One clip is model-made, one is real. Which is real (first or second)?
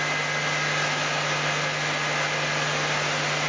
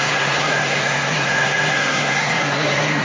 first